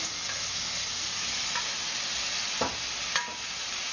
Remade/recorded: recorded